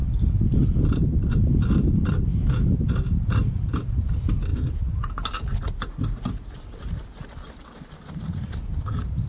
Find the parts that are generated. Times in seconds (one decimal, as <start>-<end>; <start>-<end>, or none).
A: none